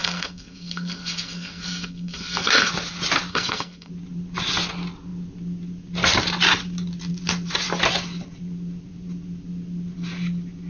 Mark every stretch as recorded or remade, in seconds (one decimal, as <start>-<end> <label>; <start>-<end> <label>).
0.0-2.7 remade; 2.7-3.3 recorded; 3.3-3.9 remade; 3.9-10.7 recorded